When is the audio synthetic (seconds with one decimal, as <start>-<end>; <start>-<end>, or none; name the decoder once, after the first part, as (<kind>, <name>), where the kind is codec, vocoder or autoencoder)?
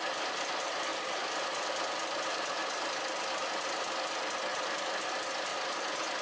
0.9-1.7 (vocoder, BigVGAN v2); 2.6-3.3; 4.5-5.1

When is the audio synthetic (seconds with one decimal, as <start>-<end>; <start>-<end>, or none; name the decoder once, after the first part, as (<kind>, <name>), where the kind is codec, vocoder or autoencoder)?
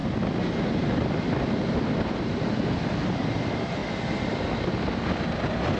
none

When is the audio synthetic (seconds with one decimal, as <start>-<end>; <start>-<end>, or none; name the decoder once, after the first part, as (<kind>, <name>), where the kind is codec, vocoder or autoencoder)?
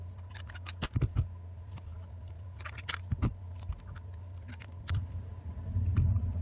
1.9-5.5 (vocoder, BigVGAN v2)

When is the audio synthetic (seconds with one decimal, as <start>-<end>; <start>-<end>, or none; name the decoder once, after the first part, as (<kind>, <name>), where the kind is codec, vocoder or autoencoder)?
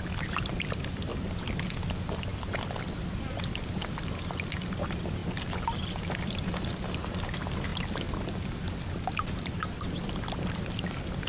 0.0-1.1 (vocoder, BigVGAN v2); 1.9-5.2; 6.1-7.7; 8.9-11.3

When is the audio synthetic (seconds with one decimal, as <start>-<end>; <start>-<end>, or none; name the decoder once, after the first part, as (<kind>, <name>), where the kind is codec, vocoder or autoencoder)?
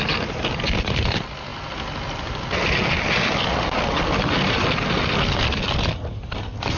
none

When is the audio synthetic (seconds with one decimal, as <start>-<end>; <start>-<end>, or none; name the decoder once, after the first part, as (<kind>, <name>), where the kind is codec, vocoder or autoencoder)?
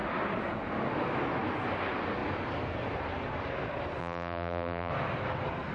4.0-4.9 (vocoder, BigVGAN v2)